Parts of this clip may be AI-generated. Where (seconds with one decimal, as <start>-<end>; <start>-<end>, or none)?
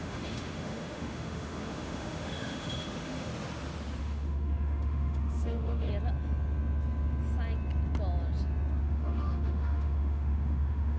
0.0-3.3; 4.0-5.9; 8.8-11.0